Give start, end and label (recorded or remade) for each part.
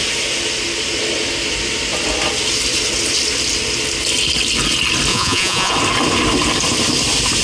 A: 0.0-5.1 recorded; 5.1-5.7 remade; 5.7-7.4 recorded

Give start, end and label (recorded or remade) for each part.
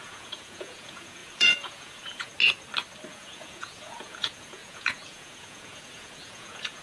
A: 0.0-2.3 remade; 2.3-3.1 recorded; 3.1-6.8 remade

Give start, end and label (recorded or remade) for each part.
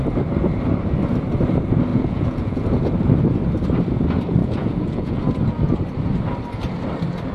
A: 0.0-1.9 recorded; 1.9-2.6 remade; 2.6-4.4 recorded; 4.4-5.2 remade; 5.2-7.3 recorded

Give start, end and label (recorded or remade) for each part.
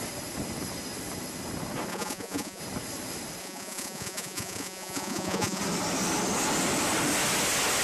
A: 0.0-1.9 recorded; 1.9-2.6 remade; 2.6-3.4 recorded; 3.4-5.6 remade; 5.6-7.8 recorded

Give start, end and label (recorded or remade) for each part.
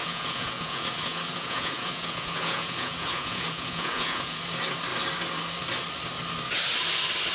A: 0.0-4.4 remade; 4.4-7.3 recorded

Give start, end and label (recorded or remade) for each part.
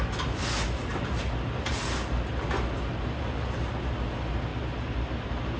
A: 0.0-5.6 recorded